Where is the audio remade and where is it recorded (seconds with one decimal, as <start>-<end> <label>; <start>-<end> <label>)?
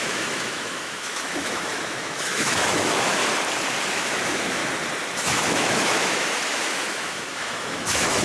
0.0-3.2 remade; 3.2-3.9 recorded; 3.9-4.6 remade; 4.6-5.2 recorded; 5.2-8.2 remade